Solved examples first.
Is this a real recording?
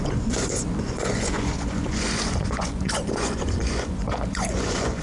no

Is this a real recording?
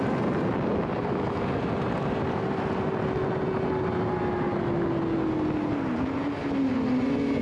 yes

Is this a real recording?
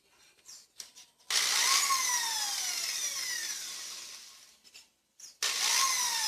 yes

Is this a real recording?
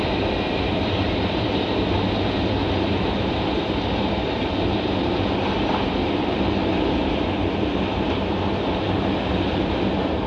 no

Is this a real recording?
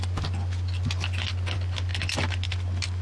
yes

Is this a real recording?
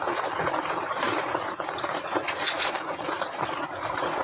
no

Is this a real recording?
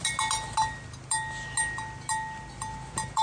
yes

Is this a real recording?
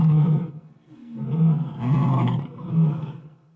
no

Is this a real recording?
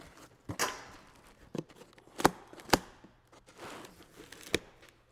yes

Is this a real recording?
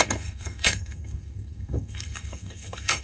no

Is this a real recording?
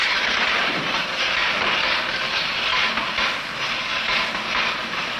yes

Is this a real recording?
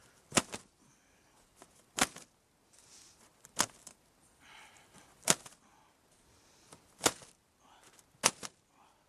yes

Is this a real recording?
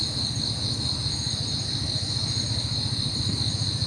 yes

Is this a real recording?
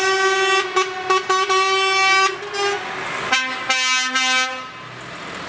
yes